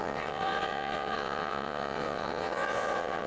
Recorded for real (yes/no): no